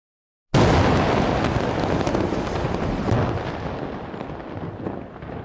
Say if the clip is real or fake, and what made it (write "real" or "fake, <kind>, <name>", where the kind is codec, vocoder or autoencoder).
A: real